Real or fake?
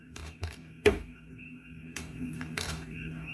fake